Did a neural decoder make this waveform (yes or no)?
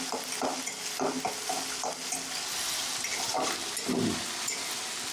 no